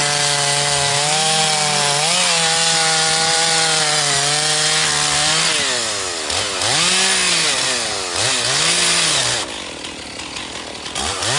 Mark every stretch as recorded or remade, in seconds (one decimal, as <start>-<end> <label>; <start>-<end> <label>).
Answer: 0.0-0.9 recorded; 0.9-1.4 remade; 1.4-11.4 recorded